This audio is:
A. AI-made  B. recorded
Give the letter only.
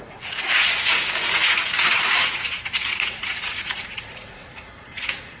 A